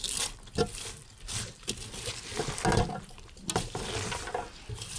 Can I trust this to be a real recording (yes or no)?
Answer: yes